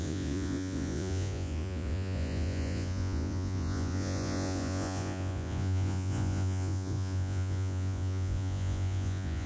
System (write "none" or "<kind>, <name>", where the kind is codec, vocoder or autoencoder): vocoder, Vocos